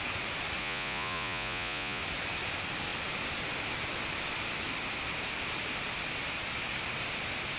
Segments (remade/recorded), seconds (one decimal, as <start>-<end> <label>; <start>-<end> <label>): 0.0-0.6 recorded; 0.6-2.0 remade; 2.0-7.6 recorded